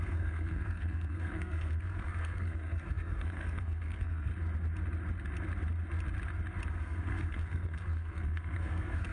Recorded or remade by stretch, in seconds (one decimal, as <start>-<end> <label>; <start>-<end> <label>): 0.0-4.3 remade; 4.3-6.7 recorded; 6.7-9.1 remade